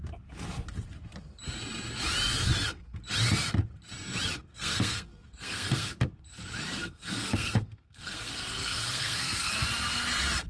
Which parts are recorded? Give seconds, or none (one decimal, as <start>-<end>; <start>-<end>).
0.0-4.4; 6.2-6.8; 9.5-10.5